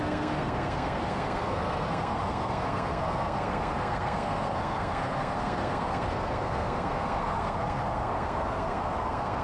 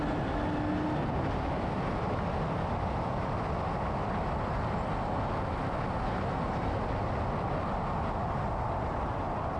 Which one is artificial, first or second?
first